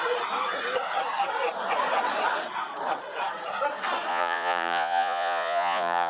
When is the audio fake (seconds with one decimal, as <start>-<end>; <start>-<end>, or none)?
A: 4.1-6.1